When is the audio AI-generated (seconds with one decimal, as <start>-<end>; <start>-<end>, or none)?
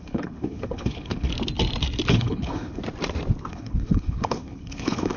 0.0-1.3; 2.1-2.8; 3.5-5.2